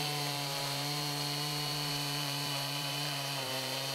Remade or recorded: remade